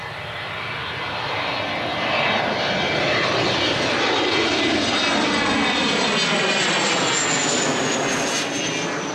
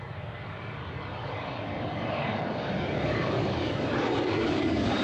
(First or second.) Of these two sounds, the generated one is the second